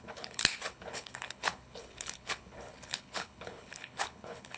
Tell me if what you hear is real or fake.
fake